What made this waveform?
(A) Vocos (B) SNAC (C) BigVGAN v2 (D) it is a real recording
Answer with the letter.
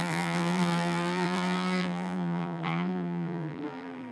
C